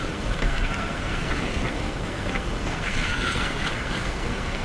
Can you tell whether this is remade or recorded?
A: remade